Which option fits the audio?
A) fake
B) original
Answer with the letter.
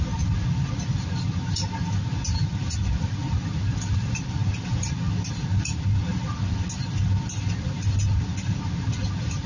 B